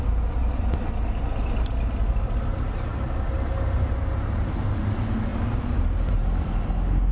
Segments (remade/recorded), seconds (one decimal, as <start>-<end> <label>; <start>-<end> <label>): 0.0-7.1 recorded